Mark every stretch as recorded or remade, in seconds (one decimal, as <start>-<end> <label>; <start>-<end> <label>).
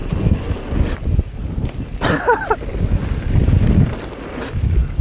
0.0-5.0 recorded